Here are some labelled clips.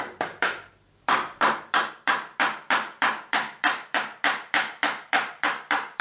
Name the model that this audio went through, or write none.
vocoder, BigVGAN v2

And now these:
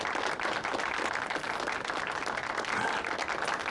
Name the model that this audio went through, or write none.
none